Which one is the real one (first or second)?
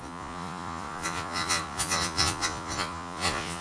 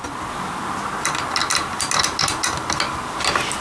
second